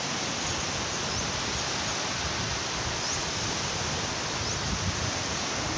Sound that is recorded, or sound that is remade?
recorded